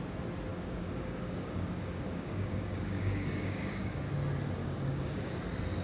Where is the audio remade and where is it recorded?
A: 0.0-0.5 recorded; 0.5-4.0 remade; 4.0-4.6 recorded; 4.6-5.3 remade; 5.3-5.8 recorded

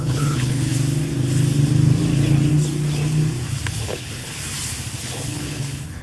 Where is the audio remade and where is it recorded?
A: 0.0-0.7 remade; 0.7-3.8 recorded; 3.8-4.4 remade; 4.4-5.0 recorded; 5.0-6.0 remade

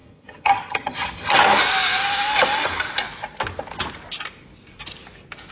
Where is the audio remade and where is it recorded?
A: 0.0-1.4 remade; 1.4-5.5 recorded